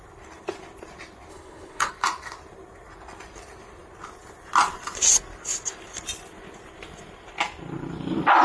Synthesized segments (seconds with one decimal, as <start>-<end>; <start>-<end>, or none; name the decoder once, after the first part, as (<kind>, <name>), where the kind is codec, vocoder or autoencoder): 1.3-1.9 (codec, HILCodec)

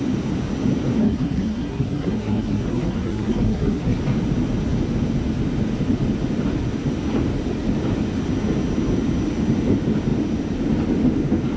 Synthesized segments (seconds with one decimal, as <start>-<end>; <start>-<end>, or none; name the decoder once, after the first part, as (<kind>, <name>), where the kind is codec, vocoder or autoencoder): 1.0-4.0 (codec, SNAC)

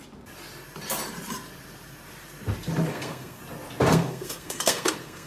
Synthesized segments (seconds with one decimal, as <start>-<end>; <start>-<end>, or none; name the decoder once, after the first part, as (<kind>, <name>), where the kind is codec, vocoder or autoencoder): 2.9-3.4 (codec, SNAC); 3.9-5.3